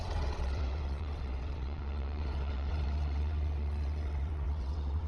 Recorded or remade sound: remade